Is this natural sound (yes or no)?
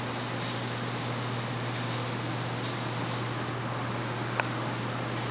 yes